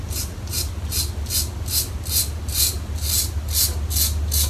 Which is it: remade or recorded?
recorded